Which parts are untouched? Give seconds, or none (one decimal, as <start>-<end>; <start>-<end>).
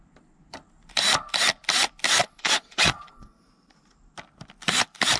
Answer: 0.0-2.2; 3.3-5.2